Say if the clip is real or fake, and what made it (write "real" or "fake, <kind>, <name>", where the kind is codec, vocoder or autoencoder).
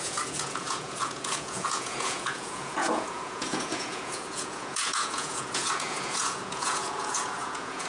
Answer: fake, vocoder, Vocos